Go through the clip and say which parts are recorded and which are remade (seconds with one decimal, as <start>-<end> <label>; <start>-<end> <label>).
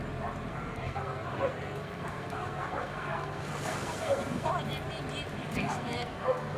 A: 0.0-0.5 recorded; 0.5-4.5 remade; 4.5-5.4 recorded; 5.4-6.6 remade